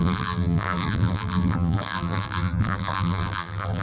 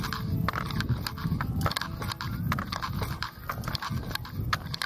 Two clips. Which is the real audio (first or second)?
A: second